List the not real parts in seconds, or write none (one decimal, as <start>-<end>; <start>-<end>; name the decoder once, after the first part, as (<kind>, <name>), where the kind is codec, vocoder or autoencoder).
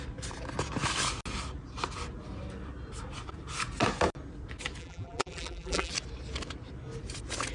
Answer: 4.8-5.9 (vocoder, BigVGAN v2)